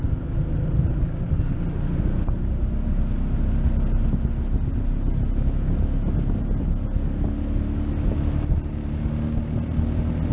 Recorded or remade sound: recorded